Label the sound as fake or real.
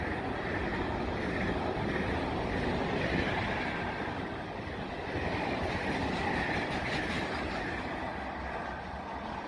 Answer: real